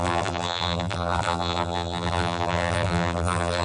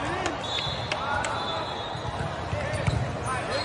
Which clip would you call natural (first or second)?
second